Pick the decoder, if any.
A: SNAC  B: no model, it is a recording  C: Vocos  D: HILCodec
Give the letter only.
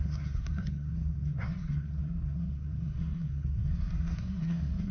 A